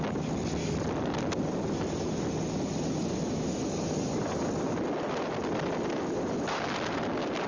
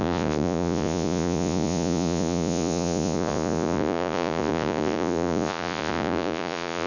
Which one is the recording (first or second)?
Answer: first